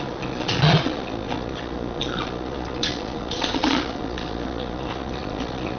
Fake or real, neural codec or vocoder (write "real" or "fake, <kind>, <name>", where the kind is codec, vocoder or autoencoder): fake, vocoder, Vocos